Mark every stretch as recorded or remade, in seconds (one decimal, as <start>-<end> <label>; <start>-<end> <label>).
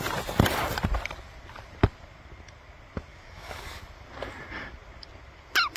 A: 0.0-3.1 recorded; 3.1-3.8 remade; 3.8-5.8 recorded